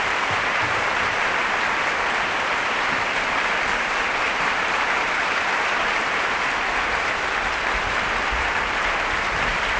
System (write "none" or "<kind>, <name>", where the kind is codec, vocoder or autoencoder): vocoder, BigVGAN v2